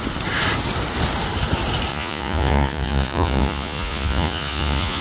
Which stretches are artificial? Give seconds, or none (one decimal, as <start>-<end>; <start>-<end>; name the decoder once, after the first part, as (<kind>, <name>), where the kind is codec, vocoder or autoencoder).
1.9-5.0 (vocoder, Vocos)